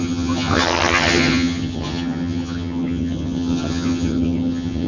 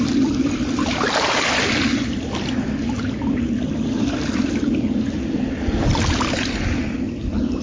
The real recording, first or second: second